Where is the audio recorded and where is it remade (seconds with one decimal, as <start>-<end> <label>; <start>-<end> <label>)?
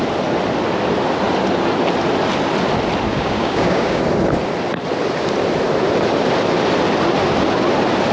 0.0-3.1 recorded; 3.1-4.0 remade; 4.0-8.1 recorded